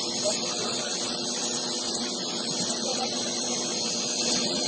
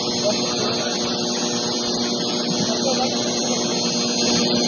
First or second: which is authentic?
second